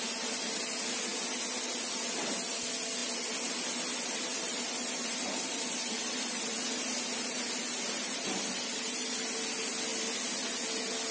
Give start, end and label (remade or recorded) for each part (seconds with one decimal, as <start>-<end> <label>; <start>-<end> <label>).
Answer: 0.0-4.3 recorded; 4.3-9.3 remade; 9.3-11.1 recorded